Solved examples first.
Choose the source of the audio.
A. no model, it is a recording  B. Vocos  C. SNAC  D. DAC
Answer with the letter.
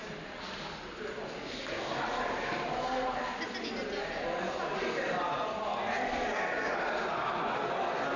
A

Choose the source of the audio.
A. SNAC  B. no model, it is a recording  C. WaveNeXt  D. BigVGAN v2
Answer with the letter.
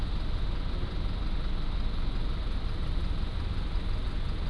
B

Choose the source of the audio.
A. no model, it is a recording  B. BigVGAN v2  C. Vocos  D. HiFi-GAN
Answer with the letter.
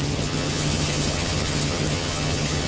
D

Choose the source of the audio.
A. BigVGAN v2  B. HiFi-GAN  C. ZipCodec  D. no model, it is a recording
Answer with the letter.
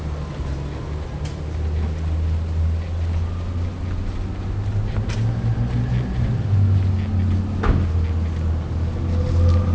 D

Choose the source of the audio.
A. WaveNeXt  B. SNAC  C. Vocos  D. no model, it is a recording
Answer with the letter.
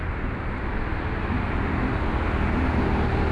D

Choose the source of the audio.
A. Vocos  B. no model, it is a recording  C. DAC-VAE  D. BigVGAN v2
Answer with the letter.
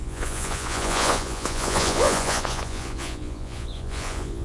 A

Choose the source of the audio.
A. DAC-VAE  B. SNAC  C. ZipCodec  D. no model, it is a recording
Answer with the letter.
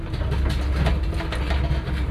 D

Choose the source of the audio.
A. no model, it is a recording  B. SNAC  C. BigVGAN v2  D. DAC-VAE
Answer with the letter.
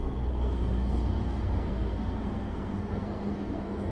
B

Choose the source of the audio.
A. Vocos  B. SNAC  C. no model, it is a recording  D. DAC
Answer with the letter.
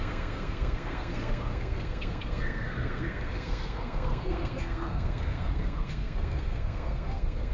B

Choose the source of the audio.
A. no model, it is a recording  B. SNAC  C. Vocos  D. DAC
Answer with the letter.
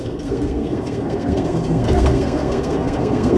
B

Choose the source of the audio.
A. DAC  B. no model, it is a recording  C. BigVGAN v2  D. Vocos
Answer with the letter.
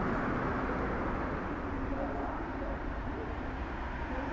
B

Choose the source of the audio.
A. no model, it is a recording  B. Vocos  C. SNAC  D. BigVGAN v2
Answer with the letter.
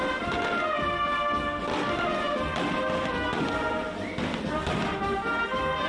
A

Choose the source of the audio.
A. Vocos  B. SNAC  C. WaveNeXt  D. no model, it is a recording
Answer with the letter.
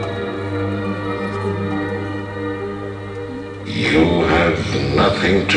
D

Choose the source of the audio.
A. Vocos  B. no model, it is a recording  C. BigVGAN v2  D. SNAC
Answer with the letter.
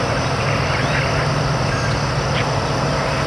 B